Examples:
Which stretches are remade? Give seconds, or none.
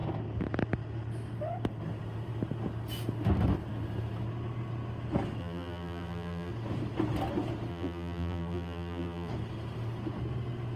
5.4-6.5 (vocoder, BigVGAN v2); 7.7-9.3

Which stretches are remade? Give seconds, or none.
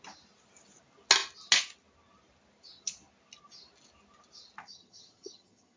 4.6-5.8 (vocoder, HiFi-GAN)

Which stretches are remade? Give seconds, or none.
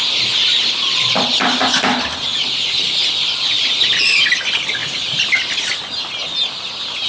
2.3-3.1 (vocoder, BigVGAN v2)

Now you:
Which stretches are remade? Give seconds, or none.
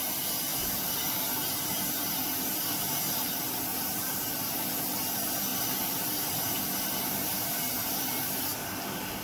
0.5-3.3 (vocoder, BigVGAN v2); 3.7-4.5; 5.5-8.4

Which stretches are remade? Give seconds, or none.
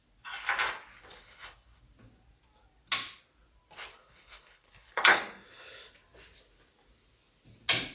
1.1-1.8 (codec, HILCodec); 3.9-5.2